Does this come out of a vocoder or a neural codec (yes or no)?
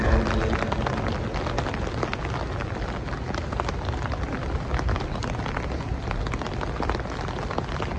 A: no